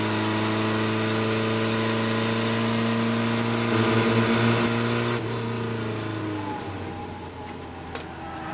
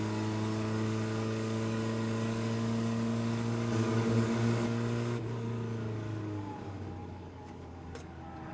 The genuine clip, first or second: first